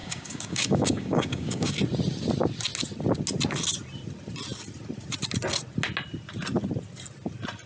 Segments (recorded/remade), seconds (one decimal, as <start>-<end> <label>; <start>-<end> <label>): 0.0-1.7 remade; 1.7-7.7 recorded